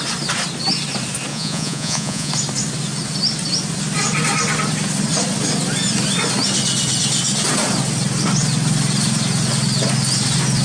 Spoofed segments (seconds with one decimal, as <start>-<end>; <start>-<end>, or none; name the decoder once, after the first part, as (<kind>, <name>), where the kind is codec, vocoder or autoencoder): 1.3-2.3 (vocoder, Vocos)